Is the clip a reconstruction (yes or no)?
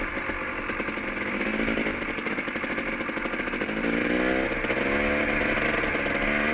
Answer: no